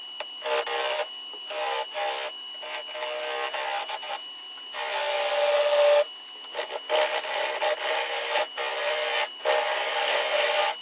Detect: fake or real real